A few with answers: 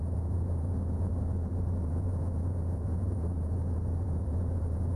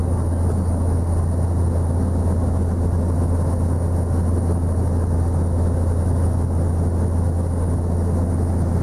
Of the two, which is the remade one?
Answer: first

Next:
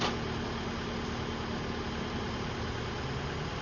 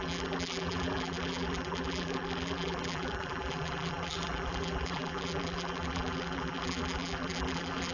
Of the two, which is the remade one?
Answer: second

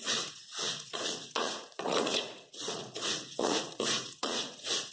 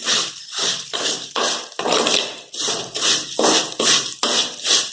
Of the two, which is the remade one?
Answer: first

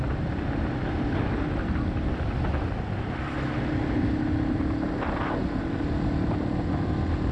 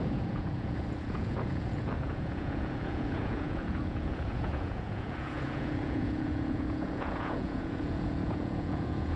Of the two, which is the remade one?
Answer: second